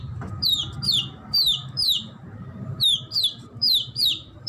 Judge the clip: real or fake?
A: fake